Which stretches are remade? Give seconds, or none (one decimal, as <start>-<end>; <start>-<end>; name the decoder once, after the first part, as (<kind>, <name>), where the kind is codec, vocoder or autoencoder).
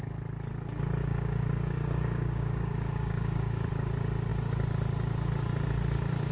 1.0-3.7 (codec, DAC)